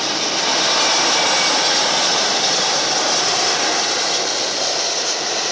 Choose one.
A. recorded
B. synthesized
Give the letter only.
A